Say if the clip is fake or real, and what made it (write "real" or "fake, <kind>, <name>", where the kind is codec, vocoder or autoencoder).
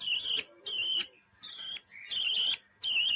real